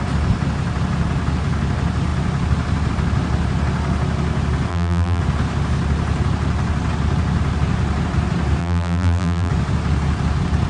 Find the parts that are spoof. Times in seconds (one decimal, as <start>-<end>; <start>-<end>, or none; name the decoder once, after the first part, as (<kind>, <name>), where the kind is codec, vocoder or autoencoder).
4.7-5.2 (vocoder, BigVGAN v2); 8.6-9.5